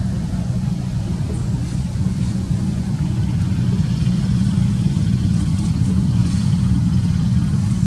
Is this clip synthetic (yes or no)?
yes